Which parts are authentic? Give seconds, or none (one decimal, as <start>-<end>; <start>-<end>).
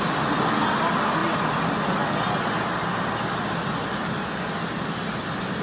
0.0-5.6